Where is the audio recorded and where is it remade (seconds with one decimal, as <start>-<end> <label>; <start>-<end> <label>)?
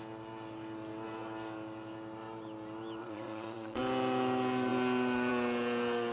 0.0-3.0 recorded; 3.0-3.8 remade; 3.8-6.1 recorded